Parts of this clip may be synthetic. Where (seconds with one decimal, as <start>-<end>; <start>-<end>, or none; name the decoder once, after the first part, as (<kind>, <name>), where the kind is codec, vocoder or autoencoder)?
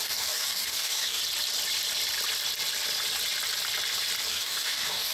0.0-1.2 (codec, DAC); 4.3-5.1